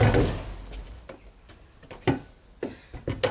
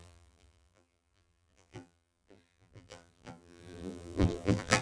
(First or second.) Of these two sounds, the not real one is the second